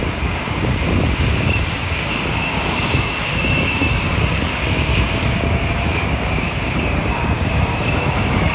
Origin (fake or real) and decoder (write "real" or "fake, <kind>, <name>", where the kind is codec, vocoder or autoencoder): fake, codec, DAC